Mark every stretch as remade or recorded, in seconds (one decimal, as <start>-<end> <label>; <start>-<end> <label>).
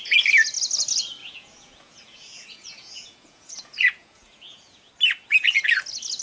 0.0-1.2 recorded; 1.2-4.9 remade; 4.9-6.2 recorded